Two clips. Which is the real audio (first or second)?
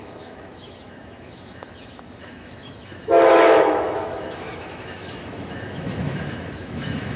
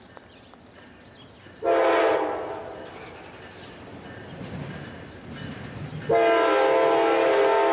second